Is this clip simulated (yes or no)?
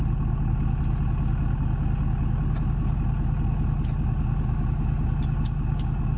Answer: no